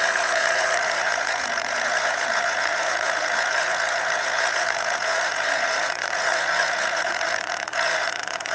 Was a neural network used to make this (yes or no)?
yes